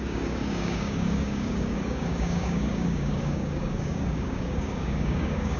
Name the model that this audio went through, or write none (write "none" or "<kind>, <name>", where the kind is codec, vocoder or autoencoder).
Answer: codec, DAC